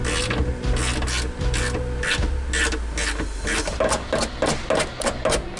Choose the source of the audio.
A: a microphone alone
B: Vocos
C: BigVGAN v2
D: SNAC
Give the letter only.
A